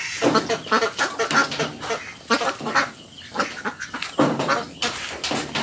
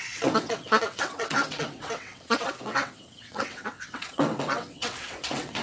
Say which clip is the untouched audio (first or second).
first